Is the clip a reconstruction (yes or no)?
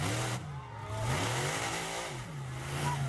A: no